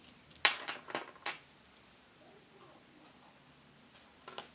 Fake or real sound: real